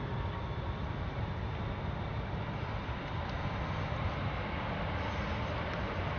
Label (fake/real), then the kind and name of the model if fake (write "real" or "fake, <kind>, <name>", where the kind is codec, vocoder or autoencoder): real